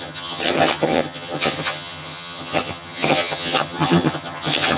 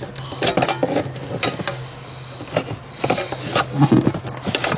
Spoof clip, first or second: first